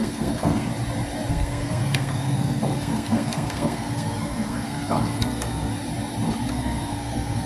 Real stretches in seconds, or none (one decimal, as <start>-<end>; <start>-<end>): 0.7-1.3; 5.7-6.5